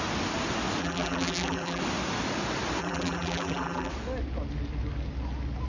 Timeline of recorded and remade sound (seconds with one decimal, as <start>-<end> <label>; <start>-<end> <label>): 0.0-0.8 recorded; 0.8-1.8 remade; 1.8-2.8 recorded; 2.8-3.9 remade; 3.9-5.7 recorded